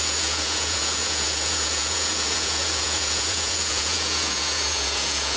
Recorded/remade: remade